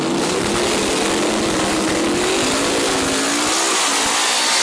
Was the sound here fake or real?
real